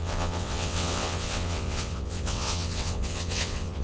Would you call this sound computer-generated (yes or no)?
yes